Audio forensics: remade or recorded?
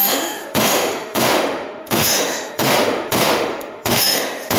remade